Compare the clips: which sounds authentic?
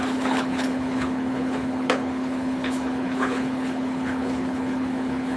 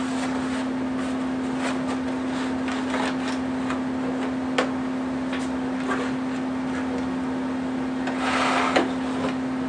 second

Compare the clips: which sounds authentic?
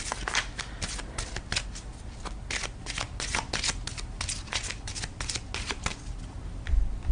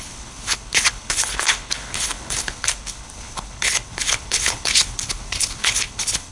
first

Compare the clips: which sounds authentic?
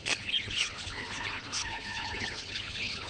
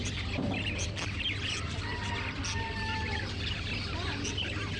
second